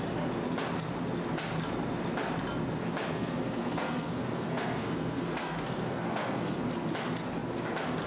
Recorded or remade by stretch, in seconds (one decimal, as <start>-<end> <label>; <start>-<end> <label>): 0.0-3.1 recorded; 3.1-6.6 remade; 6.6-8.1 recorded